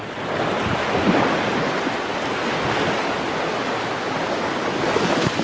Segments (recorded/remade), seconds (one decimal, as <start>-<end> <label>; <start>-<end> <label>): 0.0-5.4 recorded